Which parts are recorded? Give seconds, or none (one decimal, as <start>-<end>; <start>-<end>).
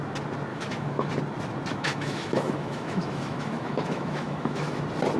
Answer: 0.0-0.5; 1.1-1.7; 4.8-5.2